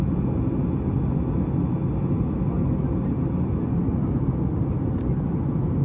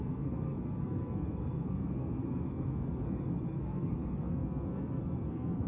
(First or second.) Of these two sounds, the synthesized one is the second